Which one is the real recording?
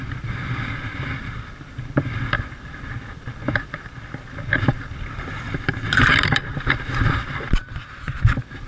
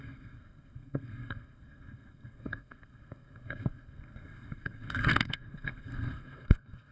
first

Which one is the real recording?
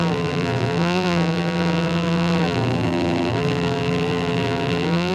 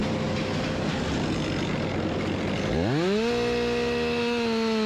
second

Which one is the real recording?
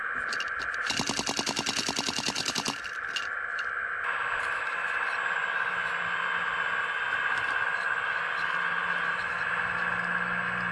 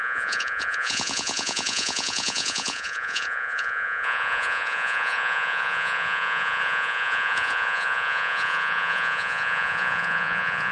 first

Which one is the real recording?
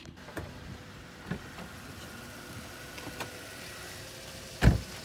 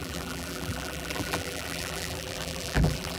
first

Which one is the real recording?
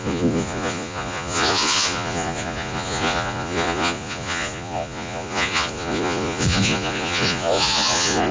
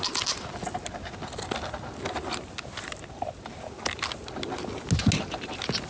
second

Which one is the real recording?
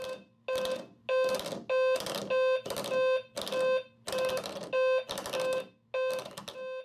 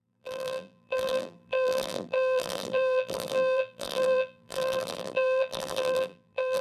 first